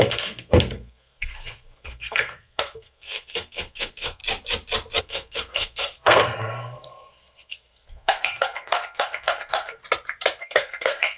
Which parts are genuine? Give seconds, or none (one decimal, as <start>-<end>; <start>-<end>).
4.2-5.0; 9.8-10.4